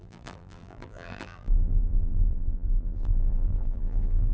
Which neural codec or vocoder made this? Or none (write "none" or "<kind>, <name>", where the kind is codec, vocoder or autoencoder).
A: vocoder, BigVGAN v2